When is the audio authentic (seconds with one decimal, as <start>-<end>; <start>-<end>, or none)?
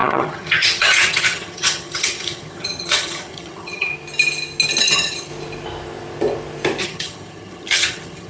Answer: 3.9-4.8; 5.3-6.8